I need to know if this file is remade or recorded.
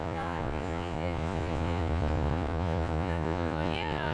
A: remade